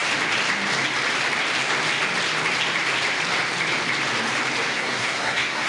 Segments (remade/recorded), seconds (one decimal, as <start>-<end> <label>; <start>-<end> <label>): 0.0-4.7 recorded; 4.7-5.7 remade